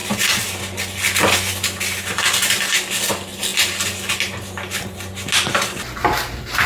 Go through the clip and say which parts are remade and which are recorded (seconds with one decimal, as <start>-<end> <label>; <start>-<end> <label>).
0.0-6.7 recorded